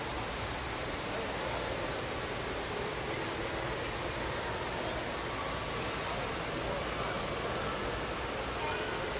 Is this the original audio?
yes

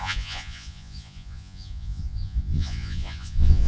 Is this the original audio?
no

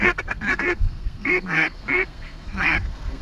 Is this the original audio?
no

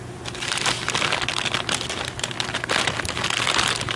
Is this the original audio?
yes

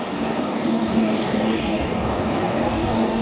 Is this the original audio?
no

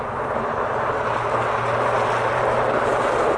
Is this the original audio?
yes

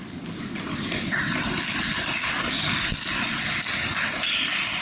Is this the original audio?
no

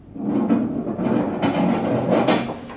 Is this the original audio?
yes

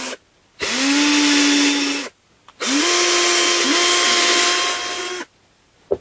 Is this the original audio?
yes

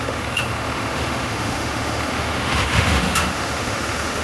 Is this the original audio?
no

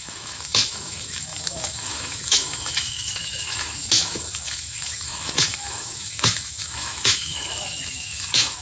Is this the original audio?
no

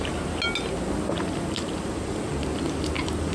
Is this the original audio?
yes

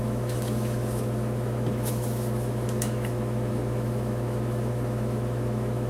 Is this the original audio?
no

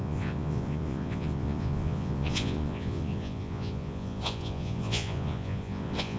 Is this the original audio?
no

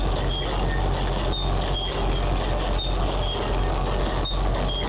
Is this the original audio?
yes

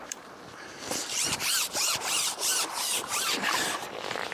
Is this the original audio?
no